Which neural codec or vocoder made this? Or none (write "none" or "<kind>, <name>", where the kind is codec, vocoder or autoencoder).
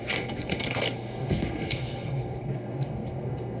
codec, SNAC